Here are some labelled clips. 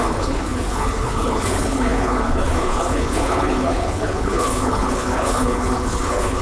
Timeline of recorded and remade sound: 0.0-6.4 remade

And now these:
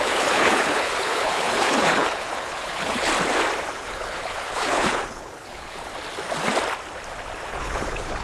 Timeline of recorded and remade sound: 0.0-3.1 remade; 3.1-3.7 recorded; 3.7-5.9 remade; 5.9-7.5 recorded; 7.5-8.2 remade

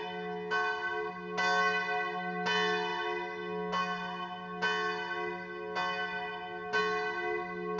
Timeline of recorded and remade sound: 0.0-7.8 recorded

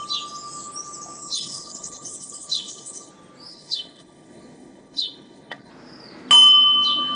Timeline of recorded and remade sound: 0.0-1.2 recorded; 1.2-3.1 remade; 3.1-3.5 recorded; 3.5-5.7 remade; 5.7-7.2 recorded

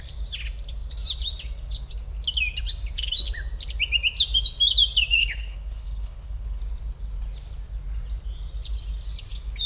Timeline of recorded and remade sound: 0.0-5.2 recorded; 5.2-6.6 remade; 6.6-9.7 recorded

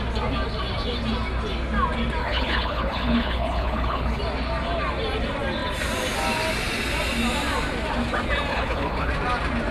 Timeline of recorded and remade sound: 0.0-2.2 recorded; 2.2-4.2 remade; 4.2-8.5 recorded; 8.5-9.1 remade; 9.1-9.7 recorded